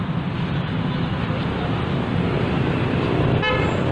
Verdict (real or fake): real